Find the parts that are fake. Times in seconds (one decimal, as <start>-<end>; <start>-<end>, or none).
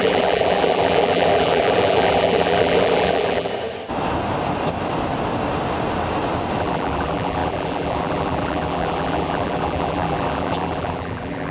0.0-3.5; 6.6-11.5